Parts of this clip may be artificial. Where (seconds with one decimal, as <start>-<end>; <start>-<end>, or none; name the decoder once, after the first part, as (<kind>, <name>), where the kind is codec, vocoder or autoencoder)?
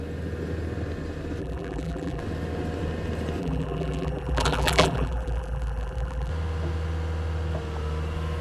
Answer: 1.4-2.2 (vocoder, BigVGAN v2); 3.4-6.3